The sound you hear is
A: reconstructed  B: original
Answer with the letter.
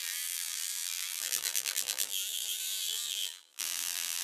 A